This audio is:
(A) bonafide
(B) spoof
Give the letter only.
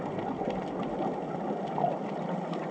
A